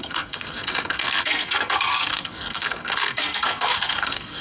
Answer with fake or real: fake